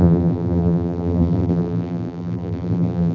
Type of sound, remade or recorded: remade